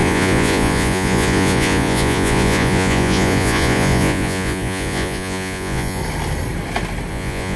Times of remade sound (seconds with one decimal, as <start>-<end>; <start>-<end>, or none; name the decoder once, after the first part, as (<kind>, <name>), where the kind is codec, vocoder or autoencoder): 0.0-6.0 (vocoder, Vocos); 7.1-7.6

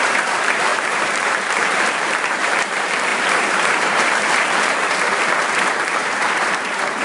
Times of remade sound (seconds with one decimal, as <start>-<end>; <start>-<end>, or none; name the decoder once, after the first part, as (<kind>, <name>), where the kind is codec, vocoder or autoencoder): 0.0-7.0 (vocoder, BigVGAN v2)

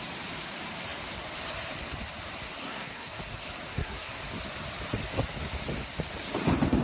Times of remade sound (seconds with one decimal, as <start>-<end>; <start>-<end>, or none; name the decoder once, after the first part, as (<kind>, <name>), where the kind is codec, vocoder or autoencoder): 2.6-3.2 (codec, SNAC); 3.7-4.2

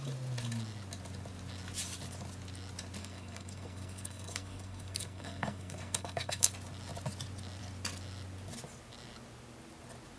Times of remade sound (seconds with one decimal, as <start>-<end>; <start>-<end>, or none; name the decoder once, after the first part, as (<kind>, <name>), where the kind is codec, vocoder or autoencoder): 3.0-6.5 (codec, SNAC)

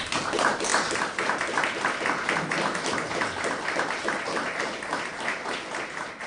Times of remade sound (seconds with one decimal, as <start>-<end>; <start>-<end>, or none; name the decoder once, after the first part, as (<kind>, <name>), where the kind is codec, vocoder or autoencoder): none

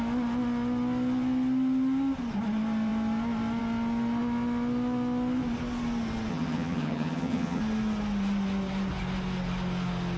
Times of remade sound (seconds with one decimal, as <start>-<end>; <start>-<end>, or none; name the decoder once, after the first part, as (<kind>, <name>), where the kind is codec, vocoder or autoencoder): 6.3-7.6 (vocoder, HiFi-GAN)